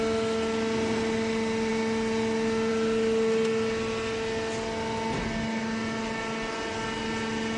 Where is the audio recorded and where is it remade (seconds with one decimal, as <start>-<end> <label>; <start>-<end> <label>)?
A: 0.0-7.6 recorded